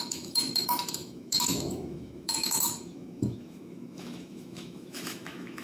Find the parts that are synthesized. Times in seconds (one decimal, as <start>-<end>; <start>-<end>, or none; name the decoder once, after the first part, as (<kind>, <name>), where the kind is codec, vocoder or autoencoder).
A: 0.0-5.6 (autoencoder, DAC-VAE)